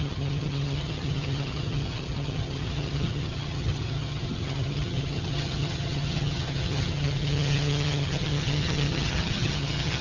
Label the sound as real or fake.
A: fake